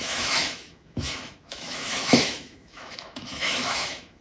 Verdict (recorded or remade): remade